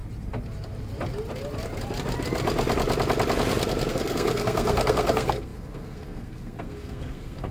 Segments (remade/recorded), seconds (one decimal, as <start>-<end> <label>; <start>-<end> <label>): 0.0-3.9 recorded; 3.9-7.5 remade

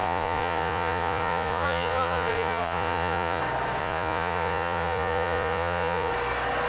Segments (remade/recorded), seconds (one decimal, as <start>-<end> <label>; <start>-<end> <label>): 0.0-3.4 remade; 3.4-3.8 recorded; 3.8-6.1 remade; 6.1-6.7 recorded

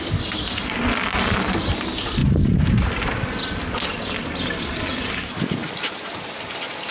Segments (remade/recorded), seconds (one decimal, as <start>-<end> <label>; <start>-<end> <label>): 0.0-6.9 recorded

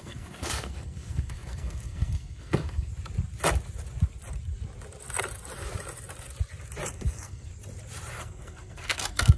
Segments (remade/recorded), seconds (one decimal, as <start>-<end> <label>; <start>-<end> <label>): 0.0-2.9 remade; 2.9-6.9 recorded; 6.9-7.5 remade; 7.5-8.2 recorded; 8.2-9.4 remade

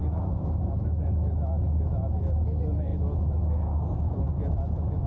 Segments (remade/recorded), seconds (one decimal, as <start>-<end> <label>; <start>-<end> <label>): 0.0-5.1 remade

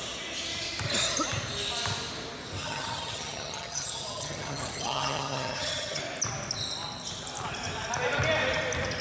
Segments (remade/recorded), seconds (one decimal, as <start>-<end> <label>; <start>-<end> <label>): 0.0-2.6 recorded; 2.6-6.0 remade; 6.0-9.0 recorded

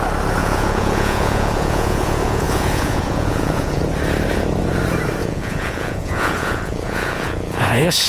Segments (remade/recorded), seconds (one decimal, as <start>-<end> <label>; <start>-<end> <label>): 0.0-0.4 recorded; 0.4-3.8 remade; 3.8-5.2 recorded; 5.2-8.1 remade

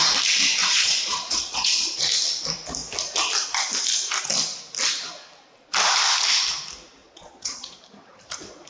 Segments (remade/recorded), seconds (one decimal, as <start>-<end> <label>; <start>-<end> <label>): 0.0-0.6 recorded; 0.6-2.0 remade; 2.0-7.0 recorded; 7.0-7.8 remade; 7.8-8.7 recorded